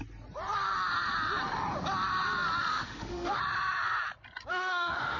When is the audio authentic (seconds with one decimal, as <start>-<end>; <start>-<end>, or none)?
0.0-2.7; 3.4-4.5